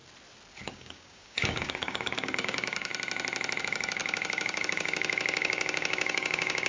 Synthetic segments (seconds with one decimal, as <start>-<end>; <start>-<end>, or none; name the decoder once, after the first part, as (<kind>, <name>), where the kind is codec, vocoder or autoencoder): 0.7-2.9 (codec, DAC); 3.6-6.7